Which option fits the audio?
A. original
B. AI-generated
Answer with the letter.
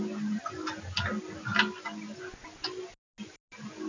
A